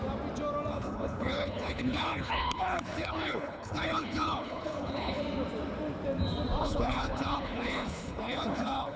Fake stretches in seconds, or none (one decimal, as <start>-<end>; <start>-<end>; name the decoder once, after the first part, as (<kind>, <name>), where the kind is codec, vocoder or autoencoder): 0.7-5.2 (codec, HILCodec); 6.6-9.0